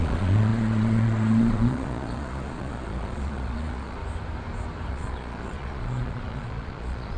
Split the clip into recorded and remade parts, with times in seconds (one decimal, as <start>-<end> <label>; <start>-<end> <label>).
0.0-4.0 remade; 4.0-4.9 recorded; 4.9-7.2 remade